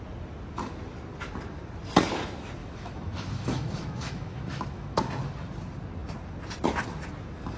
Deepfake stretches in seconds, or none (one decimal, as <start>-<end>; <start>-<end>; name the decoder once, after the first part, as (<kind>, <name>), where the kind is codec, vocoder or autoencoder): 2.6-5.1 (autoencoder, DAC-VAE)